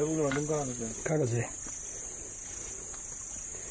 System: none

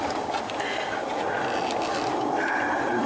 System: none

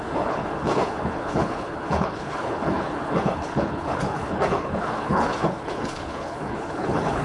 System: codec, HILCodec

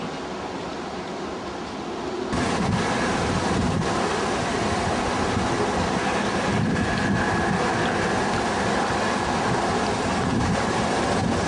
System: none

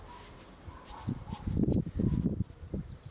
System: none